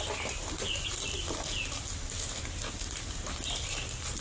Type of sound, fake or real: real